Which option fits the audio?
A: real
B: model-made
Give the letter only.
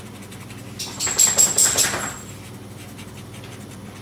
A